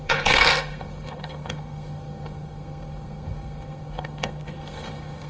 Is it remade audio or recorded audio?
remade